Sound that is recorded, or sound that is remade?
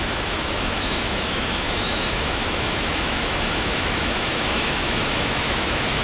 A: remade